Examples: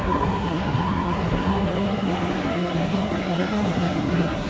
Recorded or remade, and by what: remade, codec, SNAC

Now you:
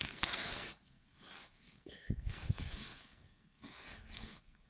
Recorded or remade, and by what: remade, codec, SNAC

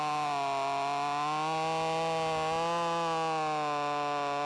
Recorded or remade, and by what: recorded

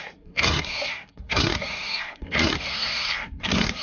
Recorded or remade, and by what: remade, codec, SNAC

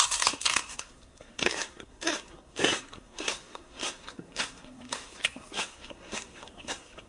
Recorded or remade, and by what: remade, codec, SNAC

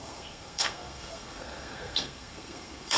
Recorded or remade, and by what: remade, codec, SNAC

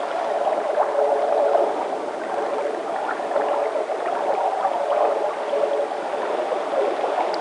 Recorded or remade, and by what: recorded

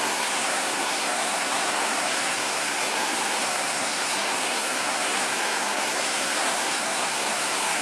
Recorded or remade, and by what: remade, codec, SNAC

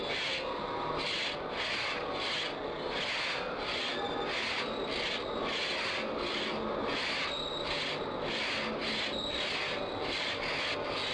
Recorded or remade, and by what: recorded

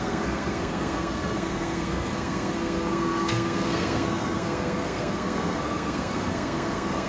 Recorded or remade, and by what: remade, codec, SNAC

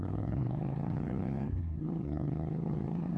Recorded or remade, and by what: remade, codec, SNAC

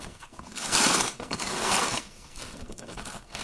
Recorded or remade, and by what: remade, codec, SNAC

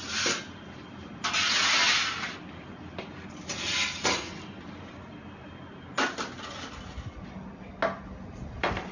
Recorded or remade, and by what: recorded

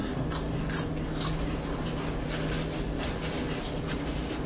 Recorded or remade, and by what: recorded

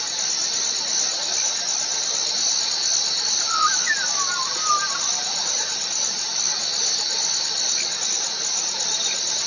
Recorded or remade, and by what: recorded